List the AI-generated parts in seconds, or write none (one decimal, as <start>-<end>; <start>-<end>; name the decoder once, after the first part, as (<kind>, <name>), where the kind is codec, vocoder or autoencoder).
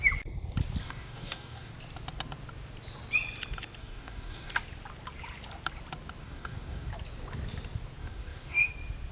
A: 0.8-1.7 (codec, DAC); 3.8-4.5; 6.2-6.9; 8.0-8.7